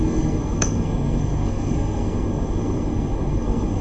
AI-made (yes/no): yes